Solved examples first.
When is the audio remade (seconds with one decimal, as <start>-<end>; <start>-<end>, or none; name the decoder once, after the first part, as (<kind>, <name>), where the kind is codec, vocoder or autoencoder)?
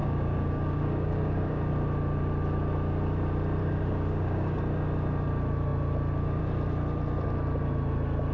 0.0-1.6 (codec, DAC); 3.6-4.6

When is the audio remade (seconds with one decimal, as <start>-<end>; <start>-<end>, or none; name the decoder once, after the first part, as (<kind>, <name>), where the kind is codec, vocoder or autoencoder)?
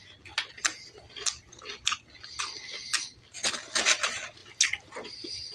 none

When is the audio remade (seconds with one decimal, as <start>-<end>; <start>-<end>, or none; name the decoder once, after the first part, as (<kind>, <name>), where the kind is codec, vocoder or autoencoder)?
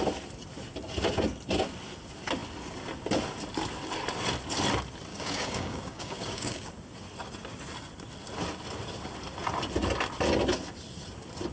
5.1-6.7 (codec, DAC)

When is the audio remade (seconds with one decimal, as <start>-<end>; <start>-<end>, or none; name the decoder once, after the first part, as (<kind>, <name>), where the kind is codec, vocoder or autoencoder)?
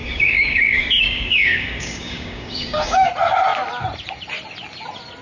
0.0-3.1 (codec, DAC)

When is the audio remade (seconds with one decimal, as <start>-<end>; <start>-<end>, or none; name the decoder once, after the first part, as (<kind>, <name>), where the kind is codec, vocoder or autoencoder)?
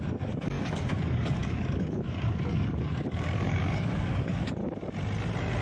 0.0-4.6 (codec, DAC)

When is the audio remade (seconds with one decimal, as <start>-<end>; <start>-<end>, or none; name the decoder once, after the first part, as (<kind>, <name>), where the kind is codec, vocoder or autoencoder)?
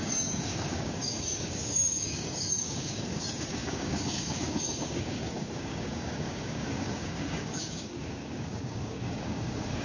0.0-9.8 (codec, DAC)